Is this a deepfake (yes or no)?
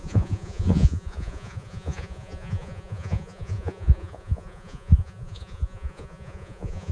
yes